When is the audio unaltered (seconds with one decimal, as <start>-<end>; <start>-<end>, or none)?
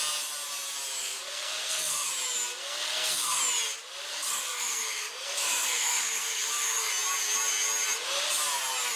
0.0-1.0; 2.1-2.5; 3.4-4.1; 6.9-9.0